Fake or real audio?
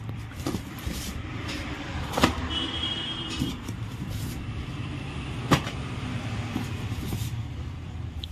fake